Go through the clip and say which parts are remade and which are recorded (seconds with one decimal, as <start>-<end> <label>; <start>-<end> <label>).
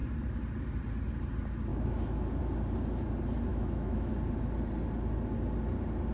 0.0-1.7 recorded; 1.7-2.4 remade; 2.4-3.5 recorded; 3.5-4.1 remade; 4.1-6.1 recorded